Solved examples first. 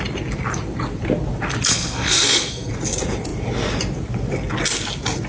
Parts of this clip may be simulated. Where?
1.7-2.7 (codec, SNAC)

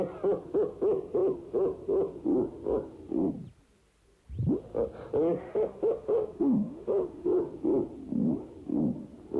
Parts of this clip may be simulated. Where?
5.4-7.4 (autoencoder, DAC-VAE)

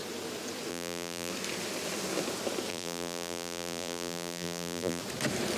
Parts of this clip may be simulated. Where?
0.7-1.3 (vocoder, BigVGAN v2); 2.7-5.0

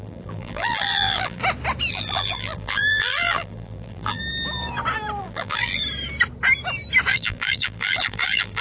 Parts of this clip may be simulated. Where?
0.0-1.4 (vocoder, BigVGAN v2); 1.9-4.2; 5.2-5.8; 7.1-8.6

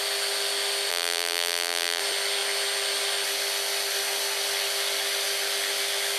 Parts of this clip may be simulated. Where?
0.9-2.0 (vocoder, BigVGAN v2)